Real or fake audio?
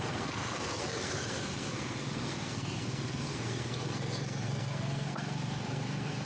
fake